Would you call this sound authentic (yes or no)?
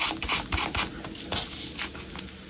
yes